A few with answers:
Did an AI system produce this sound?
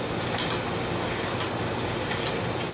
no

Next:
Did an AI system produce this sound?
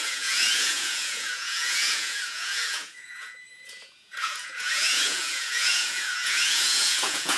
yes